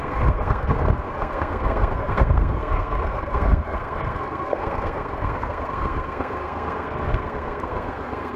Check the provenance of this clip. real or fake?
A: fake